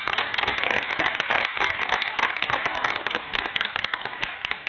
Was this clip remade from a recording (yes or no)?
yes